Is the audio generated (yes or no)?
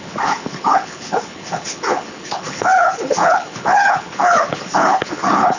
yes